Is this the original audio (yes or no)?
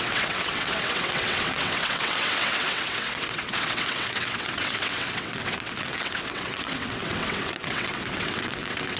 no